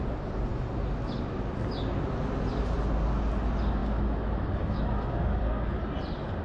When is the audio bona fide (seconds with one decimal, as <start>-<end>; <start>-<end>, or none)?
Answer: 0.0-3.8; 5.4-6.4